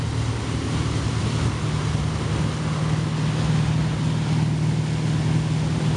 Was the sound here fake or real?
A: real